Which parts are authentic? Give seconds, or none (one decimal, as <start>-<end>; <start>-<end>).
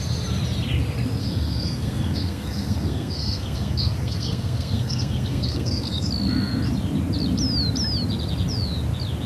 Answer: 0.0-1.2; 6.1-9.3